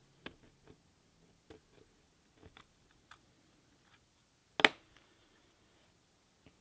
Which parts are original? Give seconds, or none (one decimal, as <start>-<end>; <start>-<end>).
0.0-6.6